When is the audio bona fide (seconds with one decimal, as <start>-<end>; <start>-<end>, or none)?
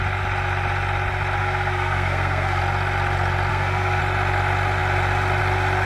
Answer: 0.0-1.4; 2.6-3.5; 4.0-5.9